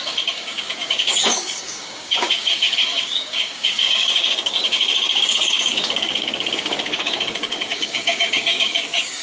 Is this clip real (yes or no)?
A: no